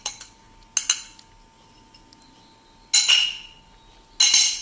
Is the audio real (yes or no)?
yes